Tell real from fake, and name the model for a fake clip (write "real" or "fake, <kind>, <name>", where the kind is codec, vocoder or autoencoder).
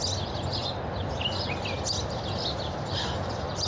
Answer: real